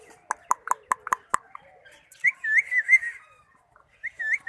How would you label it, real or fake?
real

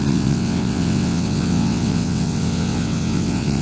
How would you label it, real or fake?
fake